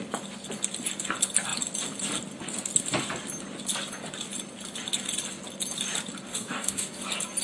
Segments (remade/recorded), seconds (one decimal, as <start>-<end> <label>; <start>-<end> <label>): 0.0-6.3 recorded; 6.3-7.0 remade; 7.0-7.4 recorded